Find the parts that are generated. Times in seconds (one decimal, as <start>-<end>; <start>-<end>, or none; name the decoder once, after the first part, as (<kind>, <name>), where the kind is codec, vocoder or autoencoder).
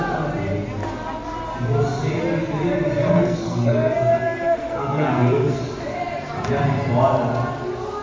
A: 3.1-5.6 (codec, SNAC)